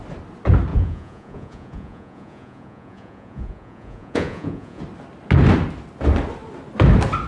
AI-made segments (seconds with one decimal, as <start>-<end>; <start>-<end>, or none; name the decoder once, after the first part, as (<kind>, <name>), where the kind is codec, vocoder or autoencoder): 0.7-4.8 (vocoder, Vocos)